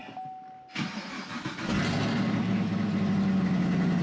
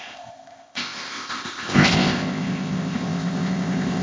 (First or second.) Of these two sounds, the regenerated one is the second